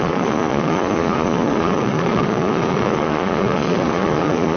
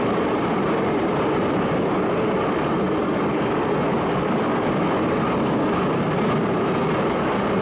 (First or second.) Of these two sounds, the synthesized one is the first